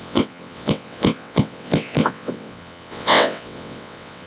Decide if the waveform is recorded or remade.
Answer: remade